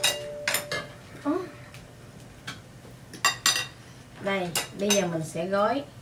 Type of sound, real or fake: real